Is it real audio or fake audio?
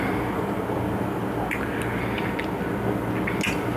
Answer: real